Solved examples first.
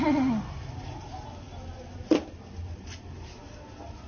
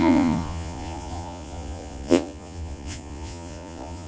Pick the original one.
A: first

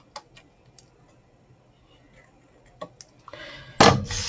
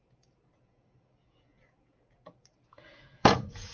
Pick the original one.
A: first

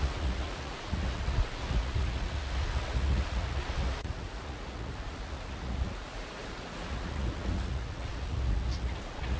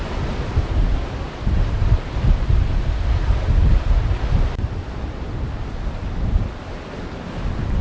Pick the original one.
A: second